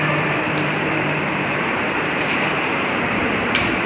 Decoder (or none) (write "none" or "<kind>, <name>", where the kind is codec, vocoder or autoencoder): vocoder, BigVGAN v2